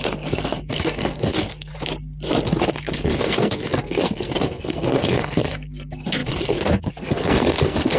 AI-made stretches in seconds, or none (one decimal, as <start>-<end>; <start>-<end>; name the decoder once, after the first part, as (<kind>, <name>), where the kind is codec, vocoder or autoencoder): 0.0-1.7 (codec, SNAC); 2.7-8.0